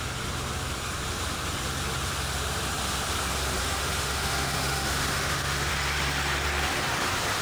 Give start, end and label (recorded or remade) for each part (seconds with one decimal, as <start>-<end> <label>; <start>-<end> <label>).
0.0-3.6 recorded; 3.6-5.7 remade; 5.7-7.4 recorded